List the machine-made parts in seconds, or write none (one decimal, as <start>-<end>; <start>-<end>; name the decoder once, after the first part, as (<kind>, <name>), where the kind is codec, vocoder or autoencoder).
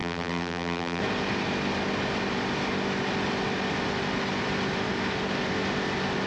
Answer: 0.0-1.0 (vocoder, BigVGAN v2)